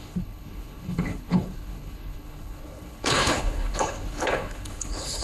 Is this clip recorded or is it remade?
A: remade